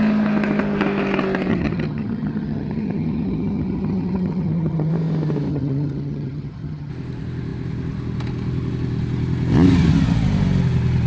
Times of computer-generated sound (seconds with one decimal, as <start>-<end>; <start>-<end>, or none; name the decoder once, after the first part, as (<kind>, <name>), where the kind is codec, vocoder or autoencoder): 1.5-4.9 (vocoder, HiFi-GAN); 5.5-6.9